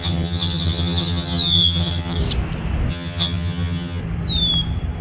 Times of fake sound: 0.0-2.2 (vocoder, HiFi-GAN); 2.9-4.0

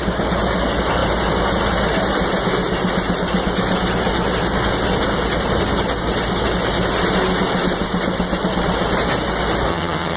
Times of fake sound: 9.7-10.2 (vocoder, HiFi-GAN)